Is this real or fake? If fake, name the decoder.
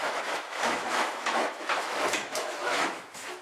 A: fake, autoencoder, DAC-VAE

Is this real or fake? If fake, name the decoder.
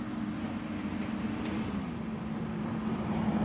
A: real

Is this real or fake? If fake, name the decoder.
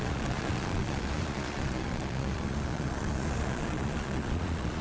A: fake, vocoder, Vocos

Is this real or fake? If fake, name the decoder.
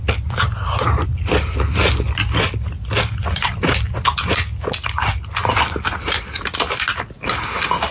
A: real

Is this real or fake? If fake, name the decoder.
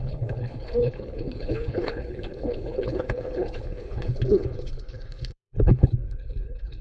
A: fake, codec, HILCodec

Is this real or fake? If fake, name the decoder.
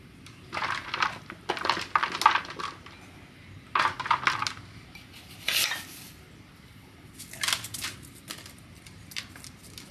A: real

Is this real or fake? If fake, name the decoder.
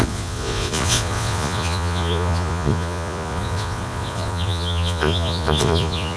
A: fake, vocoder, Vocos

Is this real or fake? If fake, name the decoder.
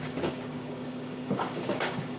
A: fake, codec, DAC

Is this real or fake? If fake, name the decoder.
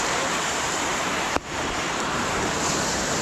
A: fake, vocoder, BigVGAN v2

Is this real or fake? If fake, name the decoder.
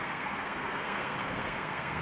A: fake, codec, SNAC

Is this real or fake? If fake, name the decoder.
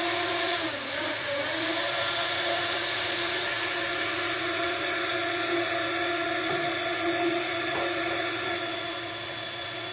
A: fake, vocoder, Vocos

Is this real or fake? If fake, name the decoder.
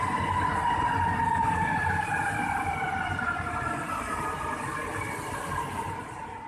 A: real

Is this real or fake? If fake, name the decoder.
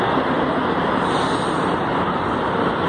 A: real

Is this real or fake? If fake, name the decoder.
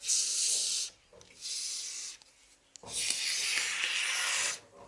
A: real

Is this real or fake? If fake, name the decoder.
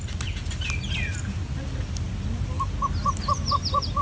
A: real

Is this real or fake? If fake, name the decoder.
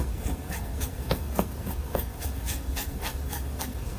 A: fake, codec, SNAC